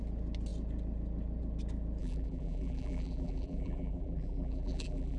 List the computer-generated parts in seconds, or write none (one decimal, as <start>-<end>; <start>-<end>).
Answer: 2.0-5.2